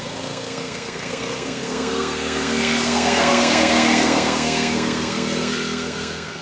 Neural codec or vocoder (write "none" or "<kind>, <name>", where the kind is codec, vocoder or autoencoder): codec, SNAC